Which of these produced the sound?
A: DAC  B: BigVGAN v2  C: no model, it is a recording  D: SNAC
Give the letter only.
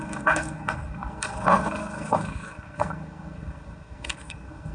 D